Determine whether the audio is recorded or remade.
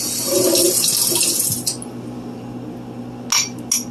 recorded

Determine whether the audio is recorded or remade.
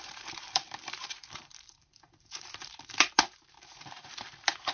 remade